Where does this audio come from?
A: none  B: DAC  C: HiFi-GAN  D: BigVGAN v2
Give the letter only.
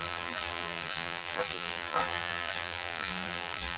D